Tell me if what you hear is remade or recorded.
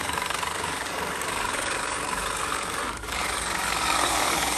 remade